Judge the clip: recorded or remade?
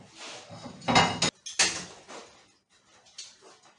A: recorded